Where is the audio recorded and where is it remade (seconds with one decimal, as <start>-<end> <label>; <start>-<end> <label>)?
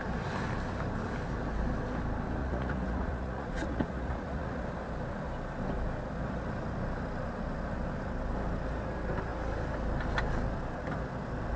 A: 0.0-2.4 recorded; 2.4-4.6 remade; 4.6-11.6 recorded